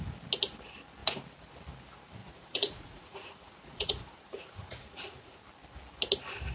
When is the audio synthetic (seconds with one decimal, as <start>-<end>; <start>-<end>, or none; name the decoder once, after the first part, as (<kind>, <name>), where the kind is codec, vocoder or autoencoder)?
2.2-5.4 (vocoder, Vocos)